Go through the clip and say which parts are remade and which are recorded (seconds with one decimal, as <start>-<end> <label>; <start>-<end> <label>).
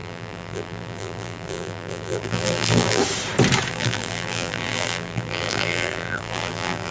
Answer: 0.0-3.0 remade; 3.0-3.7 recorded; 3.7-6.9 remade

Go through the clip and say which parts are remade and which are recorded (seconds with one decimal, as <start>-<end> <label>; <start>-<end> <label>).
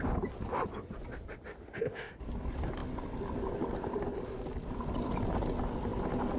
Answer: 0.0-1.5 recorded; 1.5-2.1 remade; 2.1-6.4 recorded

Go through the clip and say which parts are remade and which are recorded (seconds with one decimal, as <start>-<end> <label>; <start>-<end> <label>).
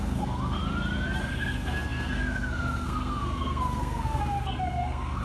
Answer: 0.0-0.6 remade; 0.6-1.2 recorded; 1.2-5.2 remade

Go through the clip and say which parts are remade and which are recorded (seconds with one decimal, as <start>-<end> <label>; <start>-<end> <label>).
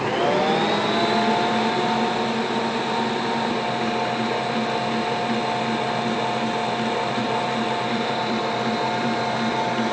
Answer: 0.0-7.2 recorded; 7.2-9.2 remade; 9.2-9.9 recorded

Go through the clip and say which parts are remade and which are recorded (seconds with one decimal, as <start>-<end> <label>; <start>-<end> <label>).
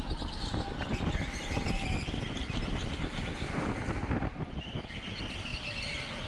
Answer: 0.0-6.3 recorded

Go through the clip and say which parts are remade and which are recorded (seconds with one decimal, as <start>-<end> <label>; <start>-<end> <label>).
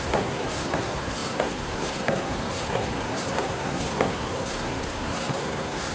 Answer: 0.0-5.9 remade